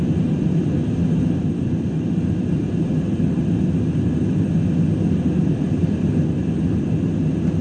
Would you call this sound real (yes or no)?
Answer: yes